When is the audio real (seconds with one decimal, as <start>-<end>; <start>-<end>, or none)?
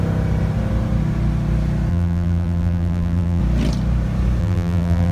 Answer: 0.0-1.9; 3.4-4.4